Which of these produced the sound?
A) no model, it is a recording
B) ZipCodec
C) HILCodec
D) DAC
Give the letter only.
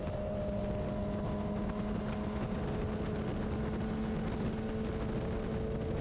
A